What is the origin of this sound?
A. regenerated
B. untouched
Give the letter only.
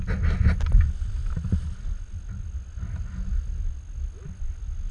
B